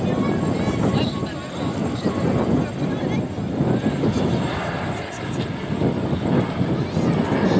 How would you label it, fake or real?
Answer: real